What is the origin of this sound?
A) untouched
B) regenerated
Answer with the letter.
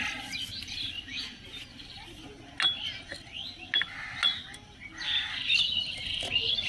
A